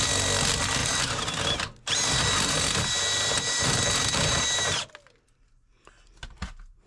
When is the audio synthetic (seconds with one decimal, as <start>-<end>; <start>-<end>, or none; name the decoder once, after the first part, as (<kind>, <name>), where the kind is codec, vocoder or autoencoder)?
0.8-4.9 (vocoder, BigVGAN v2)